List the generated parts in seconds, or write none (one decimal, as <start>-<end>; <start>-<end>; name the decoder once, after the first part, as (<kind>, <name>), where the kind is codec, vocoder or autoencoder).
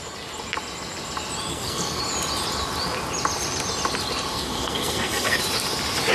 1.5-2.0 (codec, SNAC); 4.3-5.4